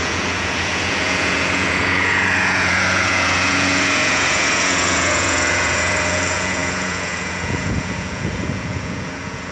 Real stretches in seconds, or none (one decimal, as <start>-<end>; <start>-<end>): none